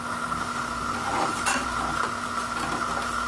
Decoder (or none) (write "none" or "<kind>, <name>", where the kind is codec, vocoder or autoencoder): none